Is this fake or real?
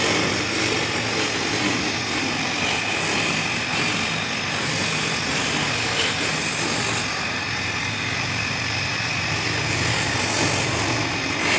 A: real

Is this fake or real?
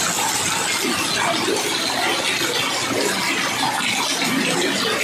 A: real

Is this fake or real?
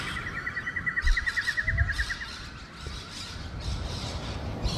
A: real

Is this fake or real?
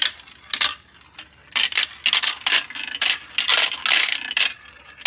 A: real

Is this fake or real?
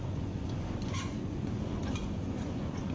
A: fake